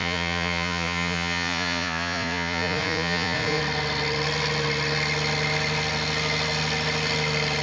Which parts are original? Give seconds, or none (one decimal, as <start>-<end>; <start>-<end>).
3.6-7.6